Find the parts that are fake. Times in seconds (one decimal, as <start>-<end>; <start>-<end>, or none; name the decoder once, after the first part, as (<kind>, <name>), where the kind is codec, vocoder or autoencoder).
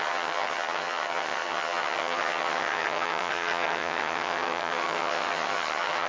0.0-6.1 (vocoder, HiFi-GAN)